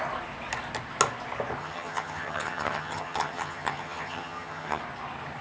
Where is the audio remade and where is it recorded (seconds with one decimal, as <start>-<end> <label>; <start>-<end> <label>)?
0.0-1.6 recorded; 1.6-4.8 remade; 4.8-5.4 recorded